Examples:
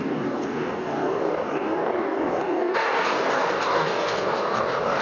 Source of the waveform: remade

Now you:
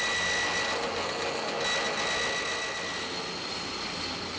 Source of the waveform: recorded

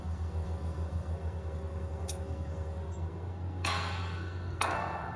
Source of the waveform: remade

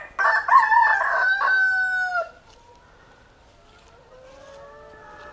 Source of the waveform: recorded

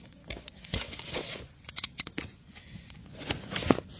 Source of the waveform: remade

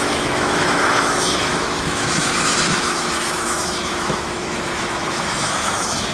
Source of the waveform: remade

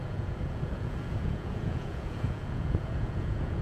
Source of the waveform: remade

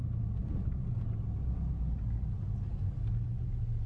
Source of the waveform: recorded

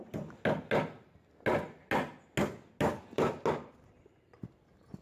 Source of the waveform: recorded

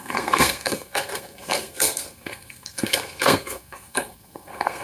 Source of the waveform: remade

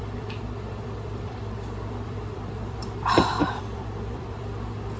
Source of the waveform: remade